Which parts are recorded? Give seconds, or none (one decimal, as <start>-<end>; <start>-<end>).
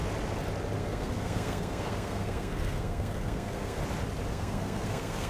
0.0-0.8; 3.8-4.3